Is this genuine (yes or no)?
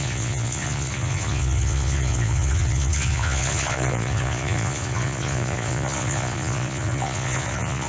no